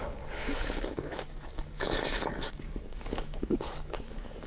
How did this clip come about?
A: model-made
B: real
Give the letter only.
A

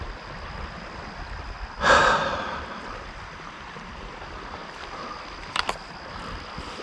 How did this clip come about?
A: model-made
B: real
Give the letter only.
A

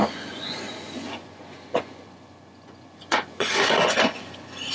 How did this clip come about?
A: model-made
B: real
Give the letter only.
A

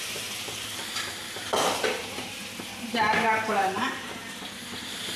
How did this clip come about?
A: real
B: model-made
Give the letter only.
B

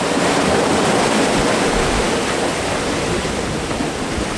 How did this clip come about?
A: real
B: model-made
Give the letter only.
A